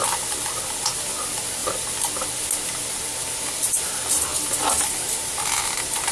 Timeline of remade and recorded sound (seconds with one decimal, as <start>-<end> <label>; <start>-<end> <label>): 0.0-6.1 recorded